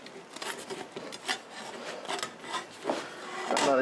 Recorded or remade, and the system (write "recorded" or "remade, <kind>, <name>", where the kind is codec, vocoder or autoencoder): recorded